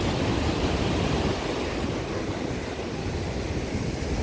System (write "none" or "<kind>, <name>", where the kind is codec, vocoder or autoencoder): none